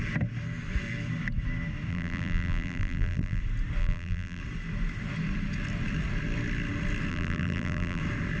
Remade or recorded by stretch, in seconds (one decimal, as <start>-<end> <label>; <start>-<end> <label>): 0.0-1.9 recorded; 1.9-3.4 remade; 3.4-3.8 recorded; 3.8-4.4 remade; 4.4-7.1 recorded; 7.1-8.0 remade; 8.0-8.4 recorded